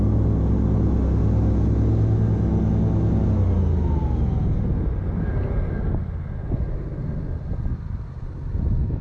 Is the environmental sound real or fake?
real